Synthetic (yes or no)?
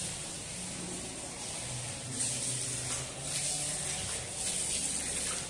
no